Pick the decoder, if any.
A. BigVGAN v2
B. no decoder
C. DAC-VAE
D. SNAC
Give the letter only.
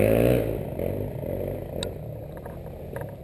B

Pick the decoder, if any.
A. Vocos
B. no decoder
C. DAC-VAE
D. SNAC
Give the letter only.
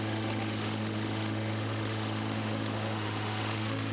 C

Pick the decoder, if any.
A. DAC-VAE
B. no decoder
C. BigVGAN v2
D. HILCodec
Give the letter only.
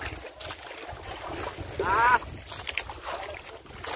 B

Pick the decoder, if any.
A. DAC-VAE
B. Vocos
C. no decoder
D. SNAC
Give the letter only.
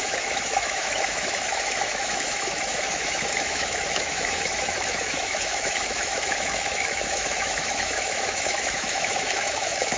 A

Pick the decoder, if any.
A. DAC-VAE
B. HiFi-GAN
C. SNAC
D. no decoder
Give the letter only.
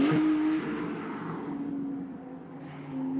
D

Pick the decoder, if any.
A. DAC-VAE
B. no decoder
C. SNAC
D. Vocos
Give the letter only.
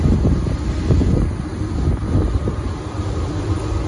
B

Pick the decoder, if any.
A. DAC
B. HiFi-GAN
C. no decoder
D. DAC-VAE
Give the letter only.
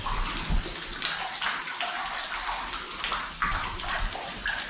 C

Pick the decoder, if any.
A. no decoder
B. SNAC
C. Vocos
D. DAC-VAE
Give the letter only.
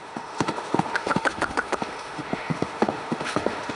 D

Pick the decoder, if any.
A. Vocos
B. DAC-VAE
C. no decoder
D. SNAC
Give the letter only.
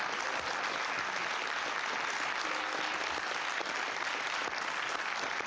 C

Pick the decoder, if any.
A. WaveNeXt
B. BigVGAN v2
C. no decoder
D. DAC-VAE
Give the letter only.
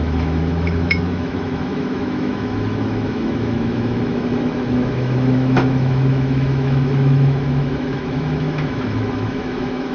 D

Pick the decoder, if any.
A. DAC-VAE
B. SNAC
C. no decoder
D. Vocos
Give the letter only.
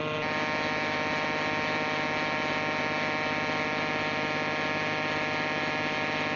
C